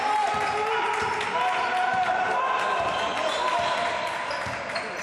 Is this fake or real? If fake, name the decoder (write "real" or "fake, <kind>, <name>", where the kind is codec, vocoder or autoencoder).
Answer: real